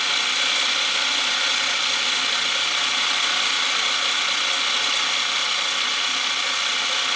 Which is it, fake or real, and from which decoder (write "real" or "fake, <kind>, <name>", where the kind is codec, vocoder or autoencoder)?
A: real